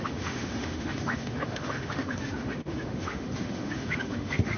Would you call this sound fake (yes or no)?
yes